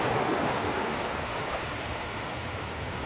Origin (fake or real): fake